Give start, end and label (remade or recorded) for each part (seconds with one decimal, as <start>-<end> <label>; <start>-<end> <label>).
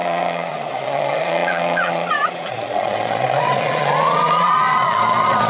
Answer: 0.0-5.5 remade